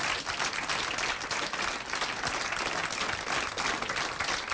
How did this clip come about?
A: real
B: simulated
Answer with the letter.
A